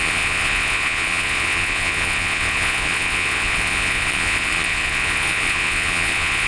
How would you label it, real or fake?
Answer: fake